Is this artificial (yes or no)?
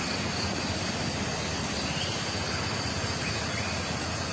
no